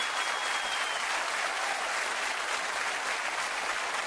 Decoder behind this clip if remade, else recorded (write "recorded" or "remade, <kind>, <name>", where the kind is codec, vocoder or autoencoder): recorded